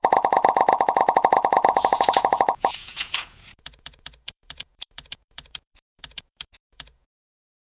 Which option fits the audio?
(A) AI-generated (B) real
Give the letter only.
A